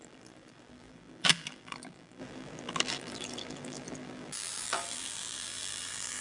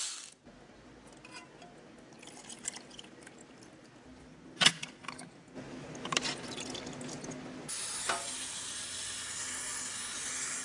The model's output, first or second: first